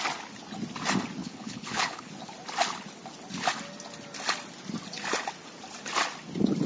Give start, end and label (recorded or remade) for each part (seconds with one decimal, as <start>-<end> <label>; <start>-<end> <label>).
0.0-1.2 recorded; 1.2-2.1 remade; 2.1-6.7 recorded